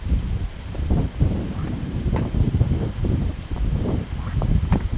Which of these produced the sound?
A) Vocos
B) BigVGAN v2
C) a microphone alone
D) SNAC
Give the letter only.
B